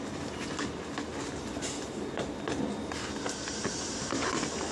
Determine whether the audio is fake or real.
real